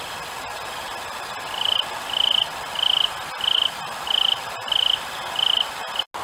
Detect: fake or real real